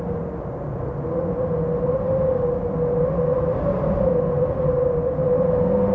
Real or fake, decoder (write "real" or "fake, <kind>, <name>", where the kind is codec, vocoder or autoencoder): real